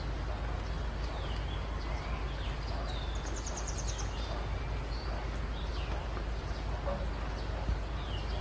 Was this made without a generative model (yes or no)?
yes